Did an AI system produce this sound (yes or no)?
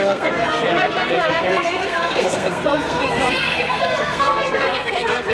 yes